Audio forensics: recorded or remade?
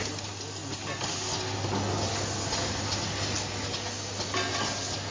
recorded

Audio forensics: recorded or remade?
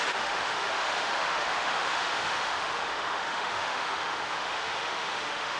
remade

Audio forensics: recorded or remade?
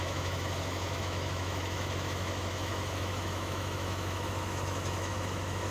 remade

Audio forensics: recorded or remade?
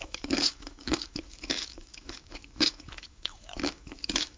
remade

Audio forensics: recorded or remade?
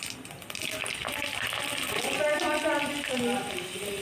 recorded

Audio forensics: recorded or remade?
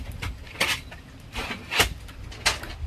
recorded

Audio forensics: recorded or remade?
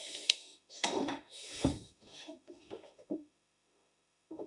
remade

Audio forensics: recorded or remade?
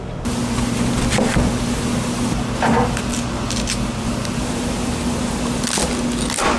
recorded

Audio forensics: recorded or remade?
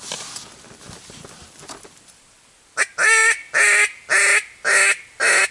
recorded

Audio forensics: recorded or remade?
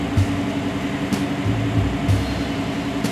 recorded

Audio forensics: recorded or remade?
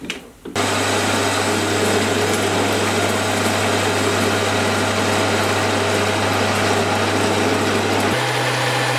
recorded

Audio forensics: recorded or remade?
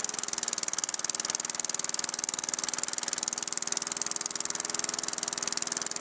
recorded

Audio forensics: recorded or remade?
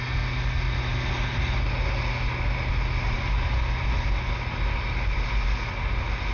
recorded